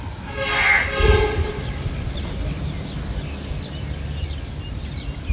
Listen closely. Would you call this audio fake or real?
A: real